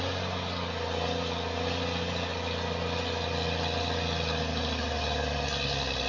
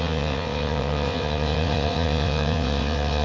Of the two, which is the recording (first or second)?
first